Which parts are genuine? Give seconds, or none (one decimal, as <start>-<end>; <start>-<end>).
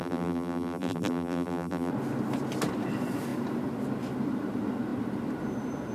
1.9-5.9